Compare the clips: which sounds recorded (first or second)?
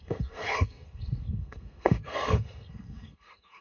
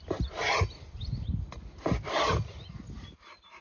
second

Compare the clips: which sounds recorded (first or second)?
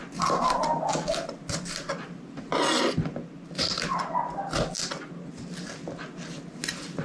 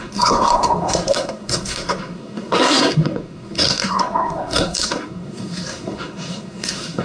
first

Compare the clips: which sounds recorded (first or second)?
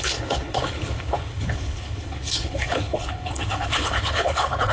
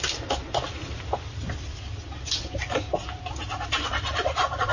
second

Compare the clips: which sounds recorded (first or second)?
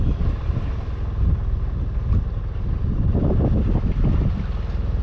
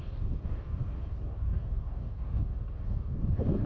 first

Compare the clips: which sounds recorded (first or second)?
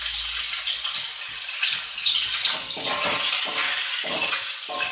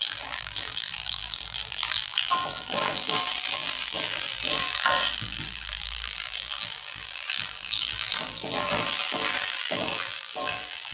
first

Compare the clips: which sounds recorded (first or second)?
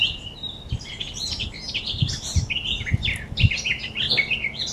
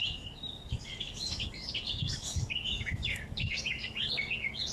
first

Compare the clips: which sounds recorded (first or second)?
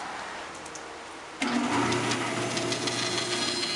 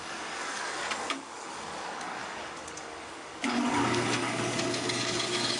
first